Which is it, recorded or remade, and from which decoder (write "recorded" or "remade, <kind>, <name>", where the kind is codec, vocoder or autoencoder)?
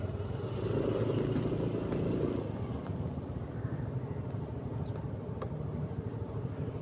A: recorded